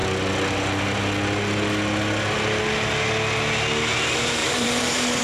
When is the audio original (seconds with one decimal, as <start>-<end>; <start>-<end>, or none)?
0.0-4.4